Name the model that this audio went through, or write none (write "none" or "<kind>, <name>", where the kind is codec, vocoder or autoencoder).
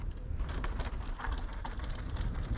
none